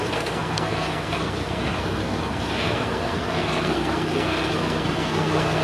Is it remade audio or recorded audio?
remade